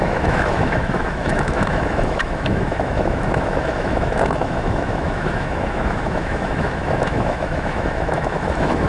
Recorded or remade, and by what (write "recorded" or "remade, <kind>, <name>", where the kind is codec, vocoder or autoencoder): remade, autoencoder, DAC-VAE